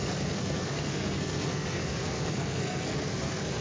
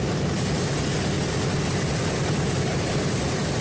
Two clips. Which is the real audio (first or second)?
second